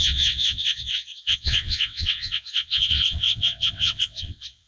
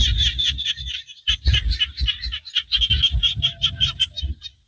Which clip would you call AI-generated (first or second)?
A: first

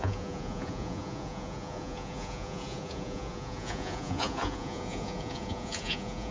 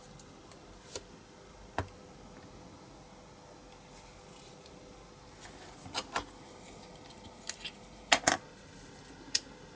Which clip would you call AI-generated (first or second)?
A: first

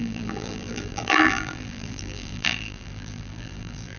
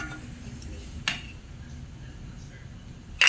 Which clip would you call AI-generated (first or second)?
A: first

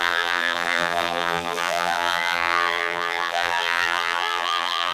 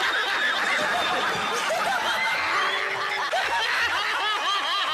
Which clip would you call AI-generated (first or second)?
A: first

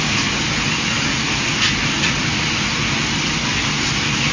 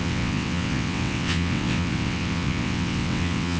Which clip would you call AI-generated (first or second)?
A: second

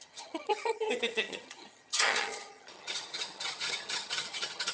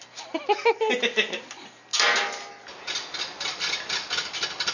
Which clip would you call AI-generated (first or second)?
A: first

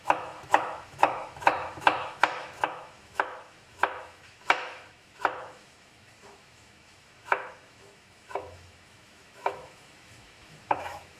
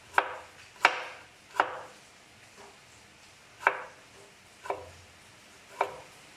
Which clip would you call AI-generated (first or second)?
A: first